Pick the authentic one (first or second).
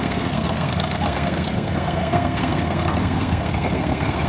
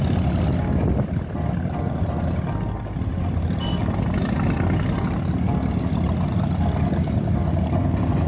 second